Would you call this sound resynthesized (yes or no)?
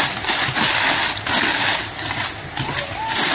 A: no